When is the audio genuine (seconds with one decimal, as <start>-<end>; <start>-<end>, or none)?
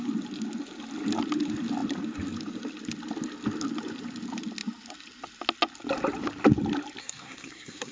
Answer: 0.0-7.0